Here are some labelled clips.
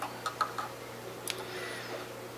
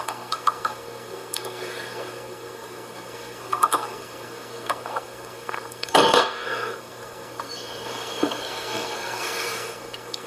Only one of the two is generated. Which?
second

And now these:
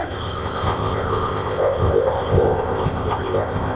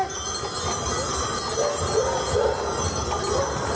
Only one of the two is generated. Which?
first